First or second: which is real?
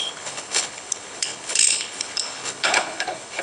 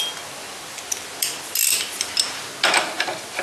second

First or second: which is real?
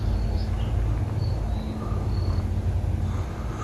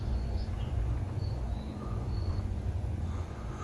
first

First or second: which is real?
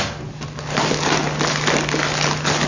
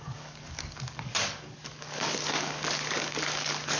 first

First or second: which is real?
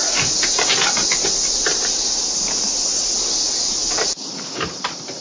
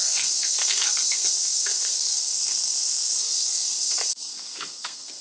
first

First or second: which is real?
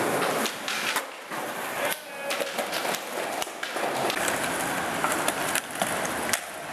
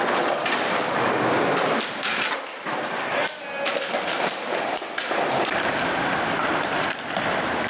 first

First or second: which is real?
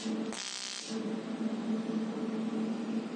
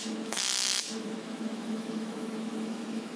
first